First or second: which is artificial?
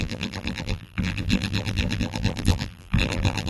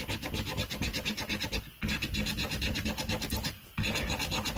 first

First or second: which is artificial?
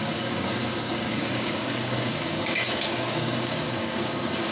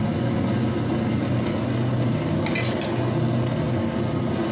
first